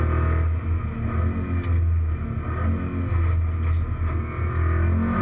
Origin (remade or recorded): recorded